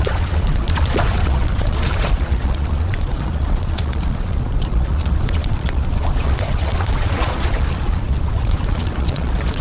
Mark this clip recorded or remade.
remade